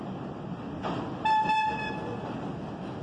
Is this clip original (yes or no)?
yes